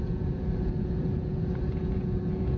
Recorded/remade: remade